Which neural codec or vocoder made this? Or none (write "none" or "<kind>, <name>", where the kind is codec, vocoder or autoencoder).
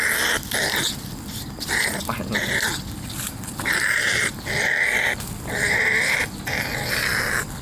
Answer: none